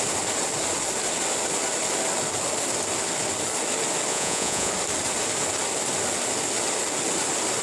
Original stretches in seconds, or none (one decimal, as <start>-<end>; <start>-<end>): 0.0-4.1; 4.7-7.6